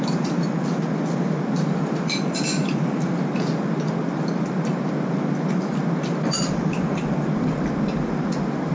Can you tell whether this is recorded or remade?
recorded